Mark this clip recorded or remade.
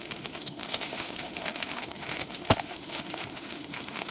remade